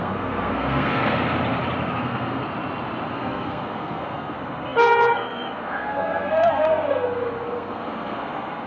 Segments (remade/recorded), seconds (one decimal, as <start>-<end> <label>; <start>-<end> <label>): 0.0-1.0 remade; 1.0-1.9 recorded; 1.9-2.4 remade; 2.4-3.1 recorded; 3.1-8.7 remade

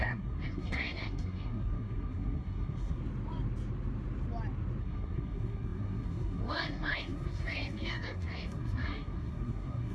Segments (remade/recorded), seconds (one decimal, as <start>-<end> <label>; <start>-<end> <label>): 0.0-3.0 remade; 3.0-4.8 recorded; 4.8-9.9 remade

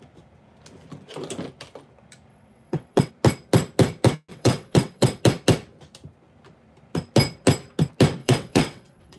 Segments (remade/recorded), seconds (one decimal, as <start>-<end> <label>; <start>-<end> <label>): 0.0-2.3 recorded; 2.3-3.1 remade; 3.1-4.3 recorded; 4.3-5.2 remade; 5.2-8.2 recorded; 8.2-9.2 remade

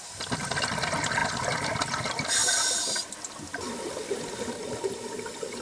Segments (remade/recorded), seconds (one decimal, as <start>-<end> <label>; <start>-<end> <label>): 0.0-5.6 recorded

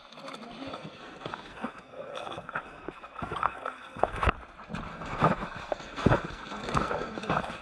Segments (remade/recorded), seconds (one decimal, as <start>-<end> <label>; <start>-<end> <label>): 0.0-0.7 recorded; 0.7-4.3 remade; 4.3-4.9 recorded; 4.9-7.6 remade

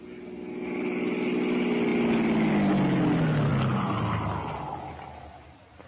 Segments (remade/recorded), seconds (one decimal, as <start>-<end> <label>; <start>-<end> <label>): 0.0-5.9 recorded